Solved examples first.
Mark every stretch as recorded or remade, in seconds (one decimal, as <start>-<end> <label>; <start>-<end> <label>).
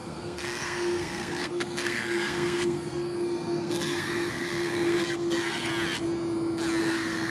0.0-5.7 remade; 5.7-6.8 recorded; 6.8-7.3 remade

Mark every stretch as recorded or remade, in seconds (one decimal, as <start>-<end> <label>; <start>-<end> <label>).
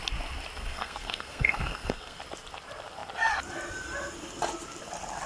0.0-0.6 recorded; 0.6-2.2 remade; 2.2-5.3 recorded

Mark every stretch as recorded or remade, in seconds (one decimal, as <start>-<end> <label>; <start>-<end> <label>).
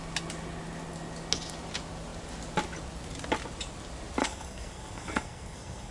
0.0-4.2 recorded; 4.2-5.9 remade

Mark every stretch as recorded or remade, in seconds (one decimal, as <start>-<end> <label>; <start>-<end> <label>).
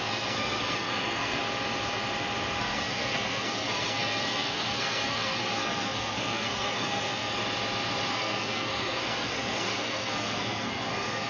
0.0-1.4 remade; 1.4-2.6 recorded; 2.6-7.4 remade; 7.4-8.1 recorded; 8.1-11.3 remade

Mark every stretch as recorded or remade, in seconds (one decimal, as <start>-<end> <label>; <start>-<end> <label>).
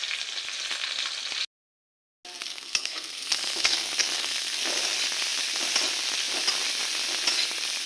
0.0-2.5 recorded; 2.5-4.6 remade; 4.6-7.9 recorded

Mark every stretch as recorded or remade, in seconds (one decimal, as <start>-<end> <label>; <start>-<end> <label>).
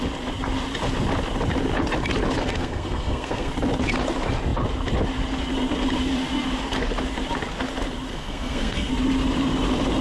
0.0-2.4 recorded; 2.4-3.5 remade; 3.5-8.1 recorded; 8.1-8.9 remade; 8.9-10.0 recorded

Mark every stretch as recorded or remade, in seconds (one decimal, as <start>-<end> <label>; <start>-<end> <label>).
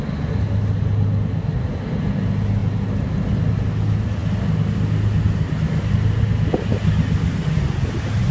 0.0-8.3 recorded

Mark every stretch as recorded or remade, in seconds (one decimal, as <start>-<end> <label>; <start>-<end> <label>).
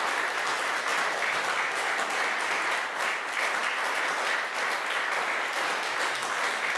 0.0-6.8 recorded